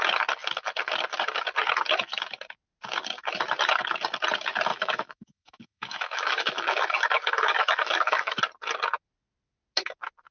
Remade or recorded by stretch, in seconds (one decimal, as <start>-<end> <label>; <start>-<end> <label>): 0.0-4.7 recorded; 4.7-8.4 remade; 8.4-10.3 recorded